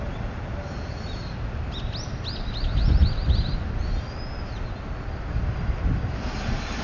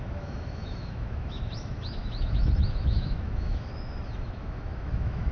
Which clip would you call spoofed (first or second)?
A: second